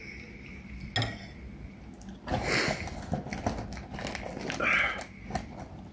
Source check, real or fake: real